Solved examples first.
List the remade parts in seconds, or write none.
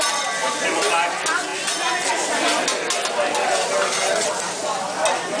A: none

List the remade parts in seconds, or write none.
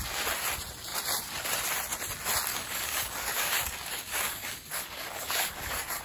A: 2.5-6.0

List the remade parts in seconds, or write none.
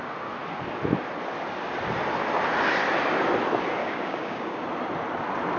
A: 3.8-4.6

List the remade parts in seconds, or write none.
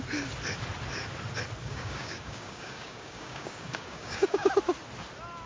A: 1.6-4.5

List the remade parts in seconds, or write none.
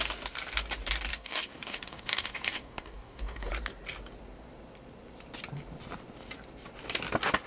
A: 1.1-3.5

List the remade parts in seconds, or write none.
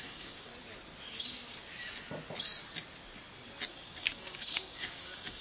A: 0.0-0.5; 3.7-5.4